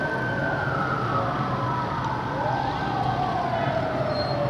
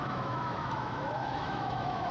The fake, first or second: second